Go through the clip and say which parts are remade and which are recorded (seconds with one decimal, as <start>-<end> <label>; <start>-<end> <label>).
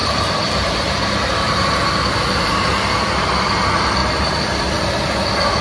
0.0-1.6 remade; 1.6-4.0 recorded; 4.0-4.6 remade; 4.6-5.6 recorded